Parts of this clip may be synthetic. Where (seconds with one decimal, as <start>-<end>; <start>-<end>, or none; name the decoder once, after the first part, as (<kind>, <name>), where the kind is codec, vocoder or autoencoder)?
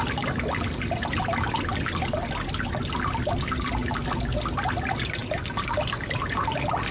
none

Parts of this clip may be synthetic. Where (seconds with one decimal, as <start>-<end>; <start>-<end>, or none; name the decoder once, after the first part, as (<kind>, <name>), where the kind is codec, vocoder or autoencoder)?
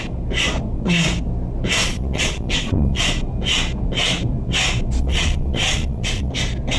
1.8-3.0 (vocoder, Vocos); 5.0-6.3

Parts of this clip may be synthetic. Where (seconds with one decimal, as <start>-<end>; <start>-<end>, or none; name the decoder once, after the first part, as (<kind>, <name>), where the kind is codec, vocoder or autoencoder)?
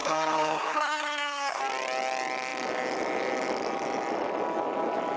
0.0-1.6 (codec, SNAC)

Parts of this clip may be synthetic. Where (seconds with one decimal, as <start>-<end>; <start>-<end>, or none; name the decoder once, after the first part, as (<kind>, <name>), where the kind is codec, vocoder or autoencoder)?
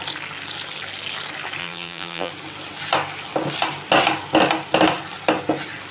1.6-2.3 (vocoder, BigVGAN v2)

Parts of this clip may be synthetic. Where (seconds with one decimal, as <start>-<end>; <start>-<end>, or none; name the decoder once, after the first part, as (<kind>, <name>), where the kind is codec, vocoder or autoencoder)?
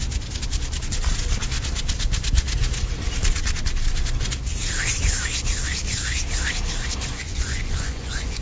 7.2-8.4 (vocoder, Vocos)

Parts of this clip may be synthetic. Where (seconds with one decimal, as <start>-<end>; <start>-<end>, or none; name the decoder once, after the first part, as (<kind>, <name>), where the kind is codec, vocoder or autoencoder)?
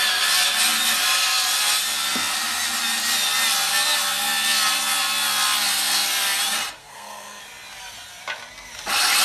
6.8-7.4 (codec, SNAC)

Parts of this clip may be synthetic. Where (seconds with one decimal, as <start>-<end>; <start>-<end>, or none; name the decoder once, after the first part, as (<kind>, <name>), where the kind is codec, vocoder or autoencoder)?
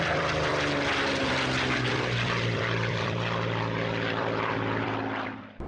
0.0-0.5 (vocoder, BigVGAN v2); 1.2-5.7